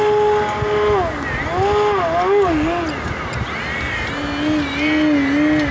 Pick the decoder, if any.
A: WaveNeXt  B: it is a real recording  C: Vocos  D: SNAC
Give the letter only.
B